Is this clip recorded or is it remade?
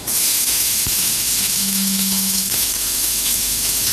remade